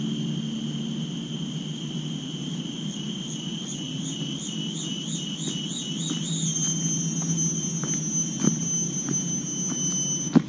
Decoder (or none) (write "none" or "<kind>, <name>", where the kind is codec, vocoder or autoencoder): none